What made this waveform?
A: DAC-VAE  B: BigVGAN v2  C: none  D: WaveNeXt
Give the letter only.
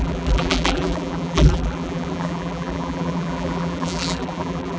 B